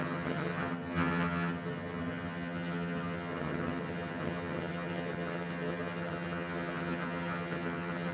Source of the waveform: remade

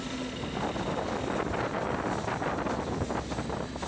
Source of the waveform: recorded